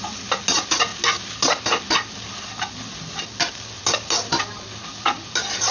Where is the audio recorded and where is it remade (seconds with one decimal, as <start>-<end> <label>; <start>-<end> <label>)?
0.0-5.7 recorded